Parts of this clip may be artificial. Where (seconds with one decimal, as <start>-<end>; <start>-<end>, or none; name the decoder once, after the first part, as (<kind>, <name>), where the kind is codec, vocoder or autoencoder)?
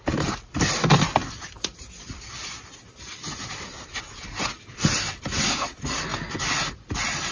none